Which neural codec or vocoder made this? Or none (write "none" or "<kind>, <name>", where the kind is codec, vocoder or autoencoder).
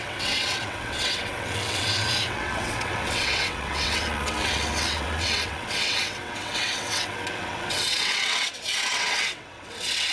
vocoder, WaveNeXt